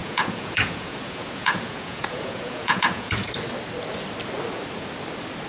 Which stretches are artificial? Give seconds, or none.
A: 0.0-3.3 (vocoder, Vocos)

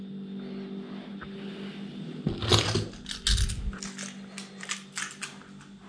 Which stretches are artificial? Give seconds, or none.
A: none